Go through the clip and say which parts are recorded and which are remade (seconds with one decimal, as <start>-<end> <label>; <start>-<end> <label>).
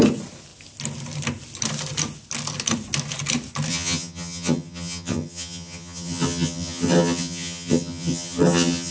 0.0-3.7 recorded; 3.7-8.9 remade